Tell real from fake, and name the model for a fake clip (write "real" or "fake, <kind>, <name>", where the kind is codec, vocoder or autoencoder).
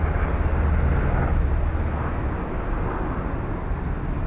real